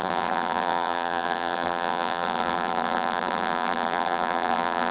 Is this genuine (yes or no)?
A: no